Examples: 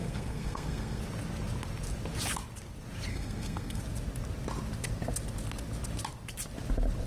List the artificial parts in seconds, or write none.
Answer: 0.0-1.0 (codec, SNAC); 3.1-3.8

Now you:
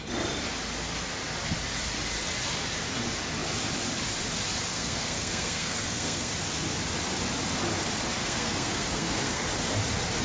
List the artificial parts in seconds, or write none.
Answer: 4.7-6.3 (codec, SNAC); 8.2-9.5

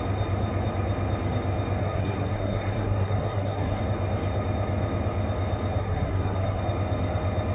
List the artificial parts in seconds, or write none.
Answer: 1.8-3.8 (codec, SNAC); 5.8-6.6

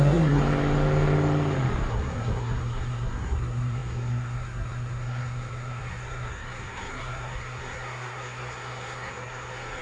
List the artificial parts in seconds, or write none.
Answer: 0.0-0.4 (codec, SNAC); 1.9-9.8

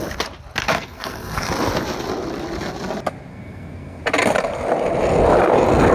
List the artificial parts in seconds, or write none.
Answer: 0.6-1.5 (codec, SNAC); 3.3-4.0

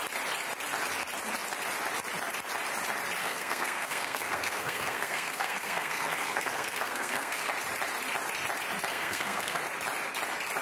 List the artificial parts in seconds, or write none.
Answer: 3.2-7.5 (codec, SNAC); 8.9-9.6

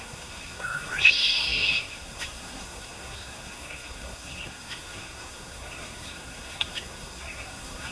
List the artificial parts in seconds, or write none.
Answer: 0.0-7.9 (codec, SNAC)

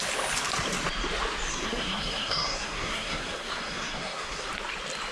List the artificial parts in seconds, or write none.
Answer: 1.5-4.5 (codec, SNAC)